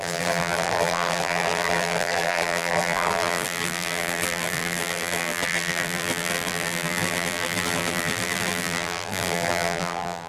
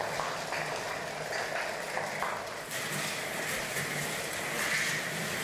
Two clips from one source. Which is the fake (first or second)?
first